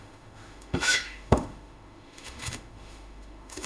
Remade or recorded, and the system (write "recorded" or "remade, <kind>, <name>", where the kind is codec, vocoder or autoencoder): remade, autoencoder, DAC-VAE